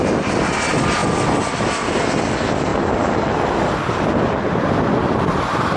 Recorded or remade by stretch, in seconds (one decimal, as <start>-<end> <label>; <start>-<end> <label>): 0.0-5.8 recorded